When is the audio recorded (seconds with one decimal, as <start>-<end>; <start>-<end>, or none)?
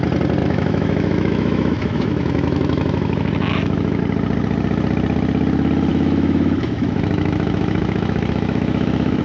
0.0-0.4; 4.0-5.9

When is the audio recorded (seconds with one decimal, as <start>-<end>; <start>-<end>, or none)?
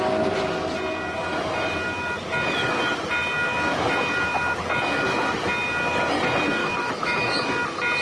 0.0-6.6; 7.3-8.0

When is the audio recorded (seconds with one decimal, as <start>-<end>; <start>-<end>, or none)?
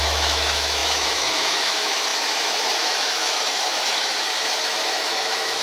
none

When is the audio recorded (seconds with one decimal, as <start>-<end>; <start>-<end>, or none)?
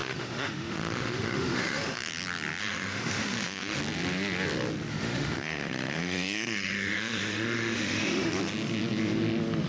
2.1-2.6; 3.8-4.9; 8.3-9.7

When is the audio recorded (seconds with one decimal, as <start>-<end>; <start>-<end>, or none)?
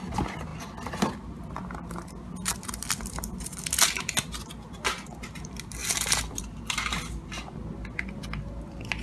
0.0-9.0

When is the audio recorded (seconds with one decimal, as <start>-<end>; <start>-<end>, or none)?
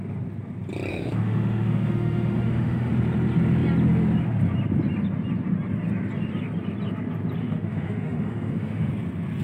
0.0-0.9; 2.9-7.4; 8.9-9.4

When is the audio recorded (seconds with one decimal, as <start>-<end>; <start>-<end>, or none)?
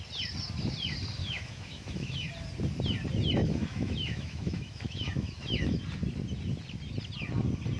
0.0-1.2; 2.3-3.4; 5.8-7.8